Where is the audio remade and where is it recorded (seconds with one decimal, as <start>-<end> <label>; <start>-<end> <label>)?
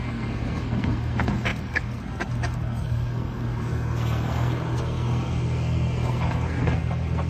0.0-7.3 remade